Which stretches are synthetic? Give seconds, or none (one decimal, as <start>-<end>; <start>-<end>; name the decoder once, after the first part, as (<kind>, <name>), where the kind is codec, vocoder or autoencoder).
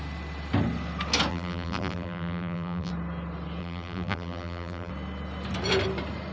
1.3-2.9 (vocoder, BigVGAN v2); 3.6-4.9